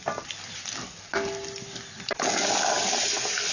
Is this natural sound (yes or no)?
yes